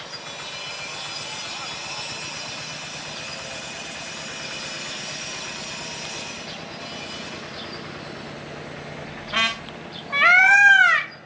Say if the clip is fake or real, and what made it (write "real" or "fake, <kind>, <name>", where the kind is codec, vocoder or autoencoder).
real